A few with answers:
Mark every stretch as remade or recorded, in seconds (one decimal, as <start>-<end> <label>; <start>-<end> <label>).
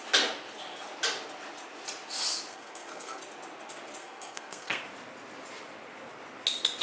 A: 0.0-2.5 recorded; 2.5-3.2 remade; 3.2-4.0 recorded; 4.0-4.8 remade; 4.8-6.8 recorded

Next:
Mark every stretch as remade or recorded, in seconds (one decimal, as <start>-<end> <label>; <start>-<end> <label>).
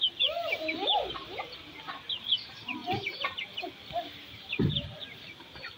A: 0.0-5.8 recorded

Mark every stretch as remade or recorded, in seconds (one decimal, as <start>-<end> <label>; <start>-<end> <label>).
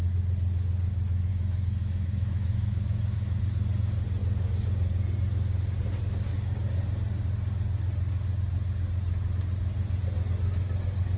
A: 0.0-1.3 recorded; 1.3-3.4 remade; 3.4-11.2 recorded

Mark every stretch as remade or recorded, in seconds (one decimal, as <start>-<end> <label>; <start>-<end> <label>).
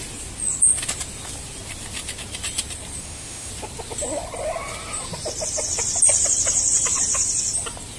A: 0.0-3.0 recorded; 3.0-3.5 remade; 3.5-8.0 recorded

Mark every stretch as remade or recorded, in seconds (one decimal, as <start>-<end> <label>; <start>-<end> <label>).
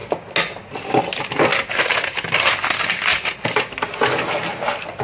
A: 0.0-5.0 recorded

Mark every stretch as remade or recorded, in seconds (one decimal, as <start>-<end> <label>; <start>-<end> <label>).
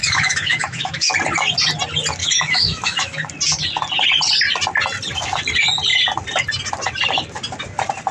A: 0.0-1.1 remade; 1.1-2.2 recorded; 2.2-3.3 remade; 3.3-8.1 recorded